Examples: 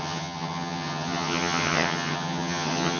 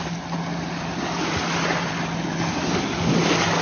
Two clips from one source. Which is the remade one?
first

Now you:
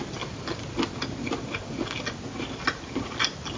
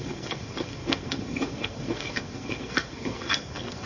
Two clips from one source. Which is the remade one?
second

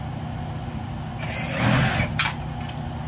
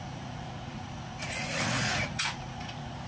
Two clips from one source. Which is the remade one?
second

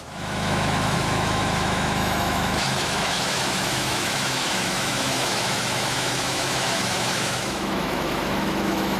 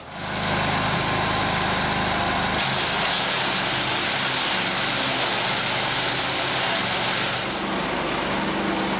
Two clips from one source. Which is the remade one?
first